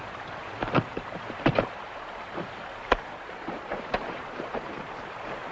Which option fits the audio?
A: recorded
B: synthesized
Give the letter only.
B